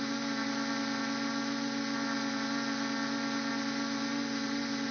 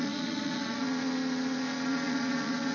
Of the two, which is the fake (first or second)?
second